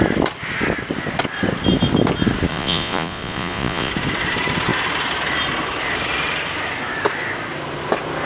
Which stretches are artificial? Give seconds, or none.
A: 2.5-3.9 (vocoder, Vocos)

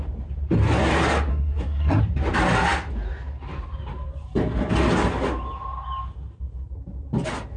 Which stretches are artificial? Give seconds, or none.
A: 1.3-2.0 (codec, SNAC)

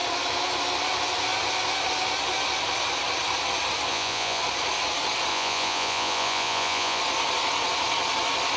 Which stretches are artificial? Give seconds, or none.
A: 3.9-4.4 (vocoder, Vocos); 5.3-7.0

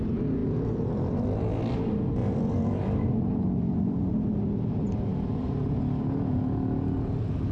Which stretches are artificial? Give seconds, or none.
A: 2.2-4.1 (vocoder, BigVGAN v2); 5.1-5.8

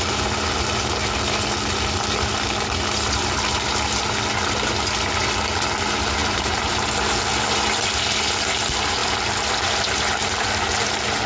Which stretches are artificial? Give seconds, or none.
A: 6.2-6.7 (vocoder, BigVGAN v2)

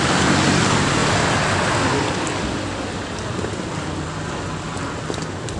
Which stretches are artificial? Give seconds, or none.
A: 0.0-1.0 (vocoder, BigVGAN v2); 4.4-5.6

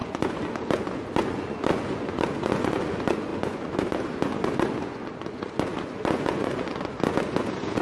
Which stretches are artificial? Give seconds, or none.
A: 0.0-7.8 (vocoder, Vocos)